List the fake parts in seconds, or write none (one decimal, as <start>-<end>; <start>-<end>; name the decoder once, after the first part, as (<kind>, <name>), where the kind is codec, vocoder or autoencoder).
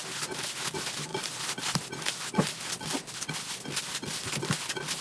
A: none